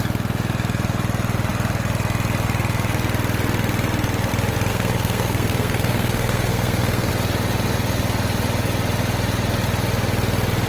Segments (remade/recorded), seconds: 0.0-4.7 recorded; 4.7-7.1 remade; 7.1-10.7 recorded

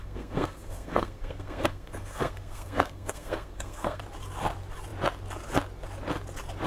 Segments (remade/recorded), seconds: 0.0-4.0 remade; 4.0-6.7 recorded

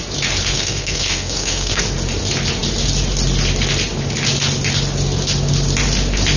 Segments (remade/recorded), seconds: 0.0-0.5 recorded; 0.5-1.8 remade; 1.8-6.4 recorded

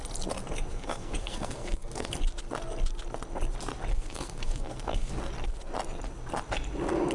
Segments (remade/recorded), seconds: 0.0-0.7 recorded; 0.7-2.1 remade; 2.1-3.9 recorded; 3.9-5.1 remade; 5.1-7.1 recorded

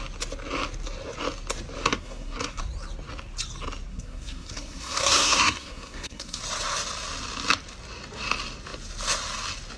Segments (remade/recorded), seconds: 0.0-1.8 recorded; 1.8-2.6 remade; 2.6-3.9 recorded; 3.9-6.4 remade; 6.4-9.8 recorded

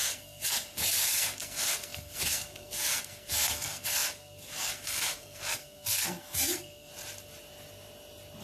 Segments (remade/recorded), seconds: 0.0-6.9 remade; 6.9-8.4 recorded